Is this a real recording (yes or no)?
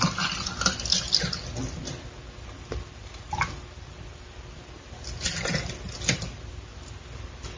yes